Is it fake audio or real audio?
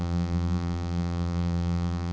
fake